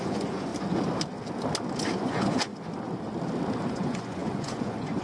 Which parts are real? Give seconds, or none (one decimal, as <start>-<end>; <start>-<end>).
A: 0.5-2.0; 2.5-3.7